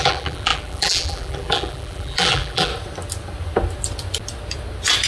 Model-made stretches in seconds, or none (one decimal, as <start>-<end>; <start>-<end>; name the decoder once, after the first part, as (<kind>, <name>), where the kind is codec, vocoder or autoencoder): 0.0-2.7 (vocoder, BigVGAN v2)